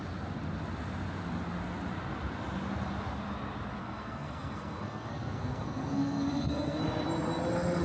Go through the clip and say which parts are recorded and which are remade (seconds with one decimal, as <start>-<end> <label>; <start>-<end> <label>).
0.0-3.8 recorded; 3.8-6.8 remade; 6.8-7.8 recorded